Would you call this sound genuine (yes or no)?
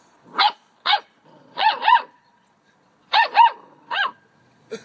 no